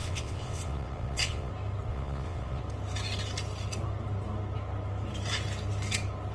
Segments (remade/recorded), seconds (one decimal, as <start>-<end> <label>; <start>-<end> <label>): 0.0-1.5 remade; 1.5-1.9 recorded; 1.9-2.6 remade; 2.6-6.3 recorded